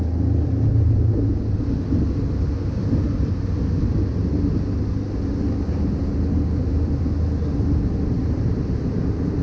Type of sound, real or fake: real